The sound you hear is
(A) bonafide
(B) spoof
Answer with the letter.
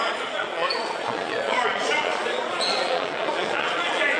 B